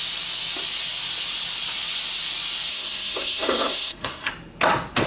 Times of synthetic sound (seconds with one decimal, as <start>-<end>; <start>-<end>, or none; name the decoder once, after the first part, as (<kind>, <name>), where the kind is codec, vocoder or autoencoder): 2.7-4.3 (codec, SNAC)